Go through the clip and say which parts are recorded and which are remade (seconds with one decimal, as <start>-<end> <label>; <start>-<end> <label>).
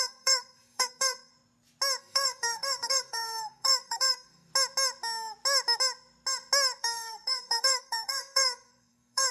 0.0-1.3 remade; 1.3-2.0 recorded; 2.0-4.5 remade; 4.5-6.8 recorded; 6.8-9.3 remade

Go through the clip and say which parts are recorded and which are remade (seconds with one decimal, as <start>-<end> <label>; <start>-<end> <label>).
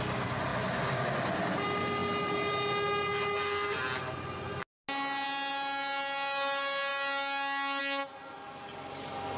0.0-9.4 recorded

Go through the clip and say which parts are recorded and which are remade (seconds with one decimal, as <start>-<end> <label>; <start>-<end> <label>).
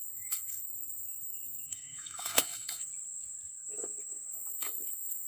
0.0-2.9 remade; 2.9-3.6 recorded; 3.6-5.3 remade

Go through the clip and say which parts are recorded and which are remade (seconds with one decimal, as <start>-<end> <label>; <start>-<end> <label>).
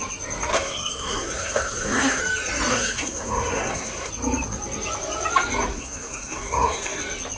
0.0-0.5 recorded; 0.5-2.2 remade; 2.2-2.7 recorded; 2.7-4.1 remade; 4.1-5.7 recorded; 5.7-7.0 remade; 7.0-7.4 recorded